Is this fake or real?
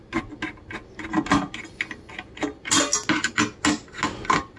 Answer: real